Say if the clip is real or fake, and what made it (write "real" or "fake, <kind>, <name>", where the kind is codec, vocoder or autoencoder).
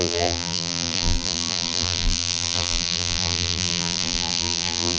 fake, vocoder, BigVGAN v2